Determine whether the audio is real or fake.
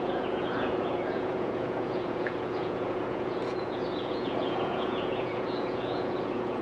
fake